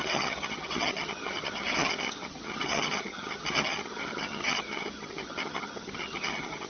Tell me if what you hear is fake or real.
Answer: fake